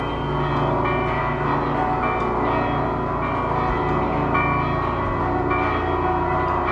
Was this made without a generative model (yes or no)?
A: yes